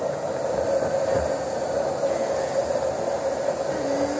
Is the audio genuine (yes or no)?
yes